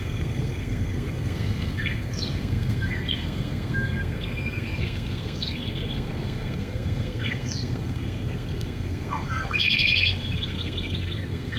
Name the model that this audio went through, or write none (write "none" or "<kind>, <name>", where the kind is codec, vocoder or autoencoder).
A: codec, SNAC